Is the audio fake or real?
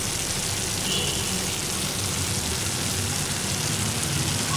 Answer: real